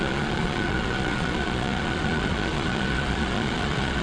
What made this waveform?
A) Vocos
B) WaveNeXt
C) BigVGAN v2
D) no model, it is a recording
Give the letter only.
A